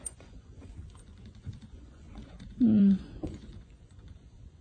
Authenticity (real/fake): fake